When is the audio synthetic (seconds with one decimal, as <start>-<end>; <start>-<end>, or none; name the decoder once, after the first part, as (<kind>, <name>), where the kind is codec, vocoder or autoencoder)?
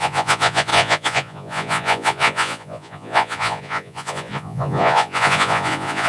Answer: 0.0-6.1 (vocoder, Vocos)